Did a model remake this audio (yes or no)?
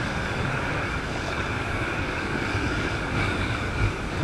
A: yes